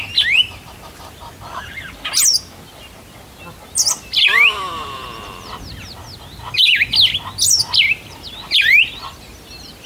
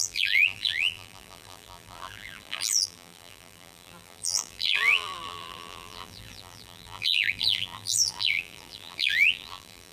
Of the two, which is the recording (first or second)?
first